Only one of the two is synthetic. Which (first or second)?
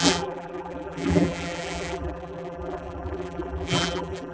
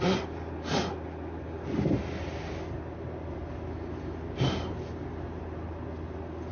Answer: first